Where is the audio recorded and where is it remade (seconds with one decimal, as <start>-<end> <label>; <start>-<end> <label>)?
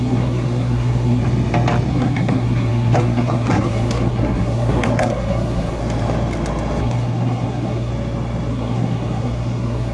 0.0-1.2 remade; 1.2-1.9 recorded; 1.9-5.8 remade; 5.8-6.8 recorded; 6.8-7.9 remade; 7.9-8.5 recorded; 8.5-9.9 remade